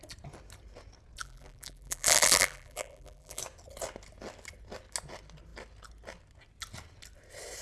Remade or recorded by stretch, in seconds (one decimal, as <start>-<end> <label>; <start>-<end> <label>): 0.0-1.2 recorded; 1.2-3.4 remade; 3.4-7.6 recorded